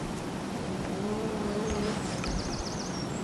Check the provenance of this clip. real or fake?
fake